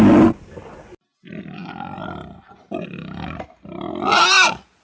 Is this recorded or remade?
recorded